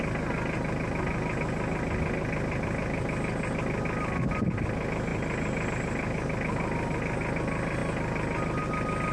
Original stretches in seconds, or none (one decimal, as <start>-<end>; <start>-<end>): 0.0-9.1